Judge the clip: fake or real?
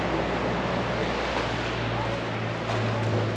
real